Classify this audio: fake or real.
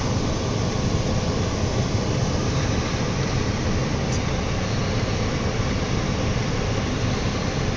real